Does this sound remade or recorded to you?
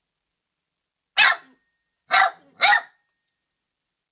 recorded